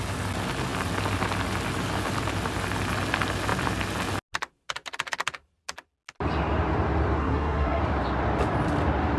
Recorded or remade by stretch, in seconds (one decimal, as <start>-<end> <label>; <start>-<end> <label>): 0.0-7.2 recorded; 7.2-7.8 remade; 7.8-9.2 recorded